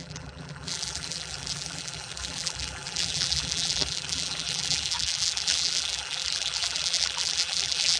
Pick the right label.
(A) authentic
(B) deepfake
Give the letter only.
B